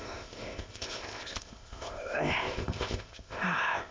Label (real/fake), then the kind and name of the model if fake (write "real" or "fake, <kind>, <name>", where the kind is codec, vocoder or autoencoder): fake, codec, ZipCodec